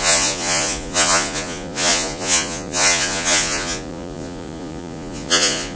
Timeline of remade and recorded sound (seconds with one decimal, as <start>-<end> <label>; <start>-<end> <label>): 0.0-5.8 remade